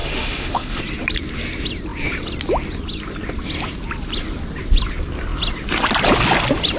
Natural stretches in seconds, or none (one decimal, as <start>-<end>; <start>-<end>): 0.8-6.8